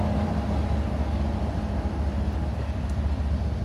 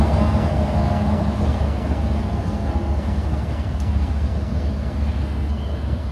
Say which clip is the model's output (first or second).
second